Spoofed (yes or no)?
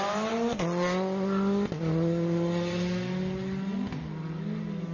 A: no